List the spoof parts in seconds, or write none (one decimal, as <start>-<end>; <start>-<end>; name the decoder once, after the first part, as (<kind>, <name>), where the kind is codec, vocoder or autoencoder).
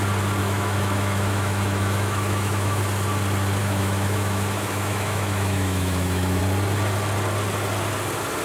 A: 0.4-2.8 (autoencoder, DAC-VAE); 3.6-6.4